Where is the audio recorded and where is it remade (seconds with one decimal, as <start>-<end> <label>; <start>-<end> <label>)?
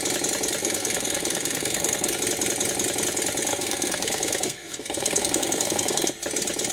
0.0-0.6 recorded; 0.6-2.2 remade; 2.2-3.5 recorded; 3.5-6.1 remade; 6.1-6.7 recorded